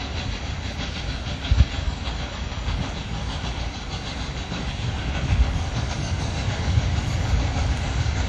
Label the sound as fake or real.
fake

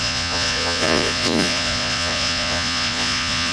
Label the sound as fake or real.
fake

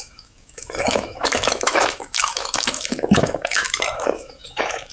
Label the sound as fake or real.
fake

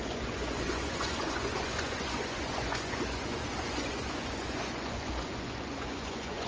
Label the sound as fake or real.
fake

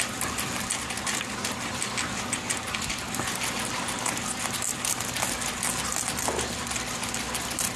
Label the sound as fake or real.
real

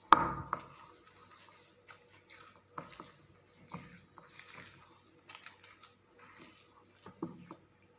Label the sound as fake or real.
real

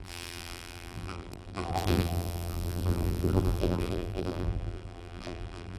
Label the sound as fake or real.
fake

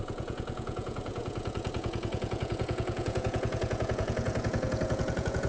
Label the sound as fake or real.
fake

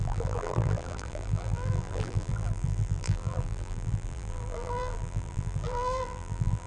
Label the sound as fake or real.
fake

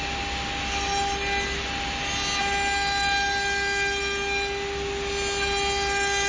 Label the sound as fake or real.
real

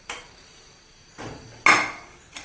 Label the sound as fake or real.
real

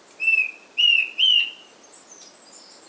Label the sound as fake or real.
real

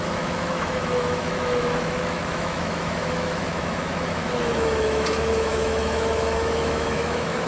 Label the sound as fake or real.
fake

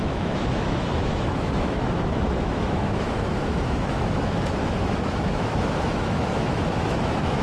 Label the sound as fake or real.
fake